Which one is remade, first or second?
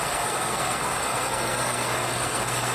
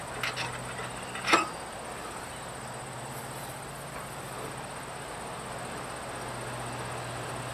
first